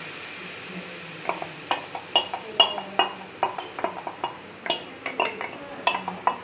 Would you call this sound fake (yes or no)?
no